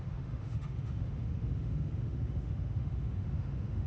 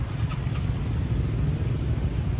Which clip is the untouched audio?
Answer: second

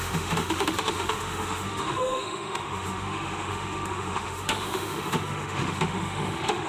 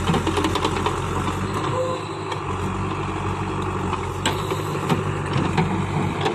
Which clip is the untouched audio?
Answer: second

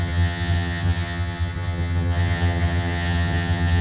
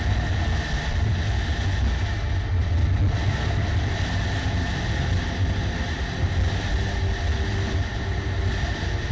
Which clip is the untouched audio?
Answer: second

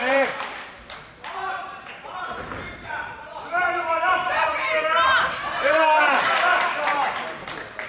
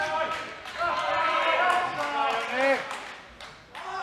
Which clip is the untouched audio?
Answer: second